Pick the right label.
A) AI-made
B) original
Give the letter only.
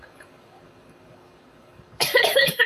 A